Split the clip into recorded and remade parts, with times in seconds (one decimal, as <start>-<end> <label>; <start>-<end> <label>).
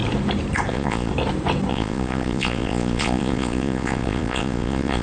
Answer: 0.0-0.7 recorded; 0.7-1.1 remade; 1.1-1.7 recorded; 1.7-5.0 remade